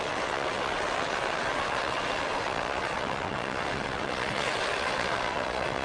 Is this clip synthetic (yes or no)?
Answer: yes